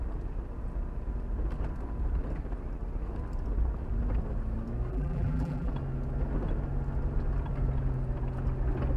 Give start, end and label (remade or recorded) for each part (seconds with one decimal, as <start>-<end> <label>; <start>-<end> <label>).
0.0-4.9 recorded; 4.9-5.7 remade; 5.7-9.0 recorded